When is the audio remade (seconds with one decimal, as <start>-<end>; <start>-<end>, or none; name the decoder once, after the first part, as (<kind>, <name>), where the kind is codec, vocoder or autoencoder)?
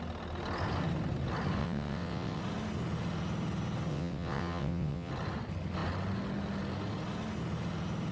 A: 1.6-2.4 (vocoder, WaveNeXt); 3.9-5.1